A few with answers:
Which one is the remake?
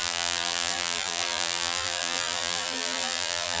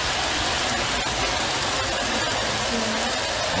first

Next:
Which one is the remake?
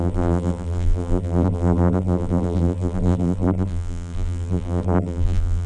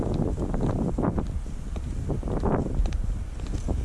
first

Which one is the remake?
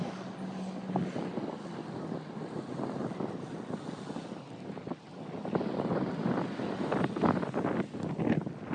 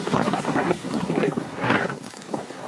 second